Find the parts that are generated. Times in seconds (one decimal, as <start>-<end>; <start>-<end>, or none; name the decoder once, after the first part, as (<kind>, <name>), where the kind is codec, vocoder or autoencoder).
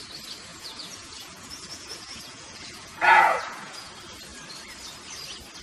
0.5-3.9 (vocoder, Vocos)